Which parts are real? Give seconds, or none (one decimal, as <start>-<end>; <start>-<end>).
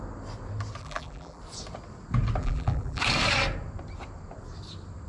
0.0-0.8; 1.4-2.4; 3.0-5.1